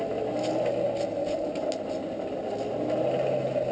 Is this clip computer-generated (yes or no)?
no